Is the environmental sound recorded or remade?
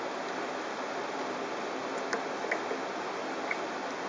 recorded